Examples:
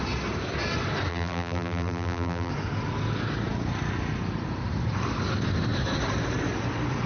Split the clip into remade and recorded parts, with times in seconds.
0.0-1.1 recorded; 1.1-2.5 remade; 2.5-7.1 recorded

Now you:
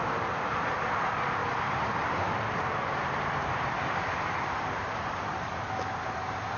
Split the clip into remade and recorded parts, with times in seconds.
0.0-1.4 recorded; 1.4-5.4 remade; 5.4-6.6 recorded

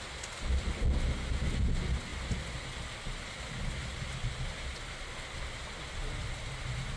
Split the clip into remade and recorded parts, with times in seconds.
0.0-7.0 recorded

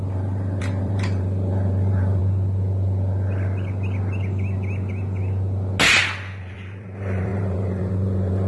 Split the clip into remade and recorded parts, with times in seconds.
0.0-2.2 remade; 2.2-6.4 recorded; 6.4-8.5 remade

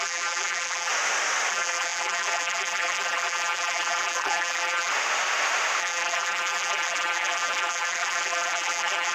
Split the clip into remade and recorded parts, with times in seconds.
0.0-0.9 remade; 0.9-1.5 recorded; 1.5-4.9 remade; 4.9-5.8 recorded; 5.8-9.1 remade

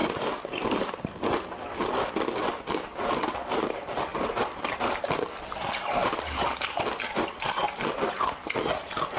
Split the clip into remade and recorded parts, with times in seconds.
0.0-0.9 remade; 0.9-4.1 recorded; 4.1-5.0 remade; 5.0-6.0 recorded; 6.0-8.3 remade; 8.3-9.2 recorded